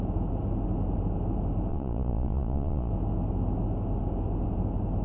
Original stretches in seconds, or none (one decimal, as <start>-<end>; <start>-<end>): 0.0-1.7; 2.9-5.0

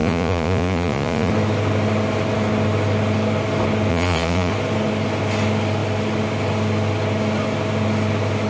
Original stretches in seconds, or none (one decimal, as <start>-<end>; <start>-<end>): 1.3-3.9; 4.5-8.5

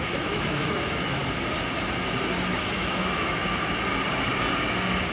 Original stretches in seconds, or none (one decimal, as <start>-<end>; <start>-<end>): 1.2-2.5; 3.4-5.1

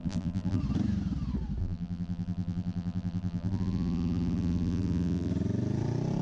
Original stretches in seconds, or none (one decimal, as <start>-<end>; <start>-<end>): 0.6-1.6; 5.3-6.2

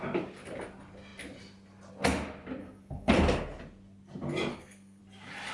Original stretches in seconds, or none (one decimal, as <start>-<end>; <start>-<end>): 0.0-2.6; 3.1-4.5; 5.0-5.5

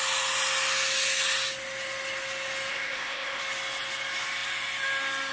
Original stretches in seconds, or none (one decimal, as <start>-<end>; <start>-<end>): 0.0-2.7; 3.4-5.3

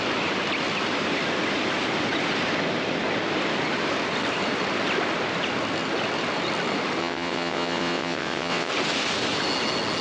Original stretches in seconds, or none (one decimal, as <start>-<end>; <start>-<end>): 0.0-7.0; 8.7-10.0